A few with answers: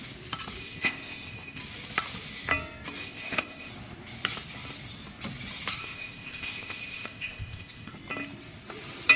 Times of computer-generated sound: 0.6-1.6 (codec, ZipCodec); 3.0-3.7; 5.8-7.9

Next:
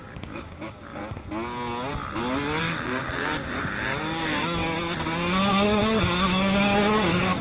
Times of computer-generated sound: 0.0-1.0 (codec, DAC); 2.6-4.6; 5.5-7.4

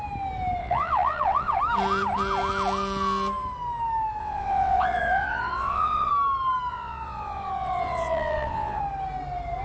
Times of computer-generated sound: 0.6-1.6 (vocoder, WaveNeXt); 4.2-6.1; 6.7-8.8

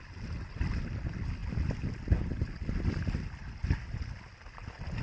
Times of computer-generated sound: none

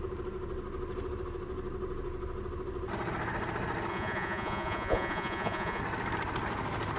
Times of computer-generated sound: 3.9-5.8 (vocoder, Vocos)

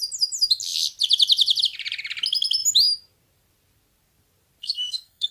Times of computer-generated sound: 4.6-5.3 (codec, SNAC)

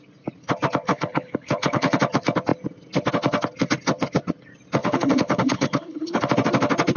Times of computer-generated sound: 0.9-2.0 (codec, HILCodec); 4.8-6.2